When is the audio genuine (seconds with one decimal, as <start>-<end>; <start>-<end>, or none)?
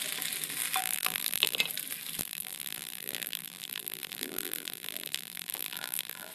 0.0-0.8; 1.6-2.2